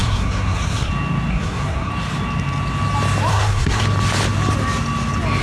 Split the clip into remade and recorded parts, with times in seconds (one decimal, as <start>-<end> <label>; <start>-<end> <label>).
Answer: 0.0-0.9 remade; 0.9-1.3 recorded; 1.3-1.9 remade; 1.9-3.3 recorded; 3.3-3.8 remade; 3.8-5.4 recorded